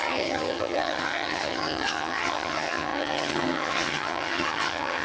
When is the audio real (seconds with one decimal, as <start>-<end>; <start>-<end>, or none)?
none